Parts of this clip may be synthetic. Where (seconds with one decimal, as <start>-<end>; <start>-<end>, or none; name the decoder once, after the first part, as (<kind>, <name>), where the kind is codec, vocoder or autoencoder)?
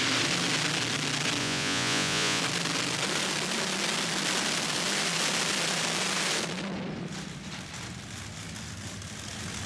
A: 1.4-2.4 (vocoder, Vocos)